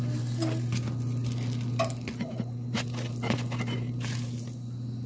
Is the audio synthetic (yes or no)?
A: no